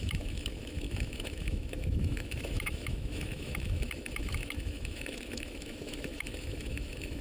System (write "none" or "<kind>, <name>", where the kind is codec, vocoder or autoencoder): autoencoder, DAC-VAE